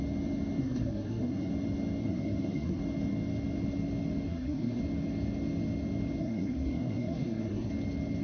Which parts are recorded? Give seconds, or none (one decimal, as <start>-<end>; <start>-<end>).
0.0-0.6; 1.5-2.0; 2.8-4.3; 4.8-6.2; 7.7-8.2